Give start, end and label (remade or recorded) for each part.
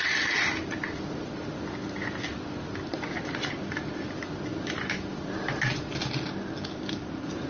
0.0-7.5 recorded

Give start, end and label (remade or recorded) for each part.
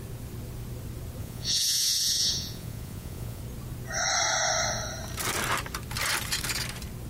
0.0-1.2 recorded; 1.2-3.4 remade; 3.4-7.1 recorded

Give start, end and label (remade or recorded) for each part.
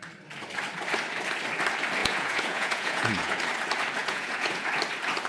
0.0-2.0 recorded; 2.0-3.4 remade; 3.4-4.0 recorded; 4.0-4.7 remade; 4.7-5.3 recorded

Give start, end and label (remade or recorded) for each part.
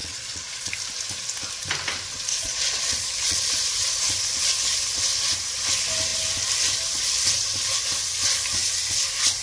0.0-0.7 remade; 0.7-2.3 recorded; 2.3-3.5 remade; 3.5-9.4 recorded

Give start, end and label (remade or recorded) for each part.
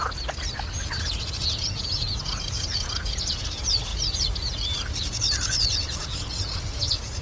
0.0-1.2 recorded; 1.2-7.2 remade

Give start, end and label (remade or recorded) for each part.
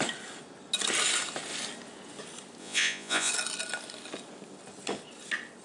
0.0-2.6 recorded; 2.6-3.3 remade; 3.3-5.6 recorded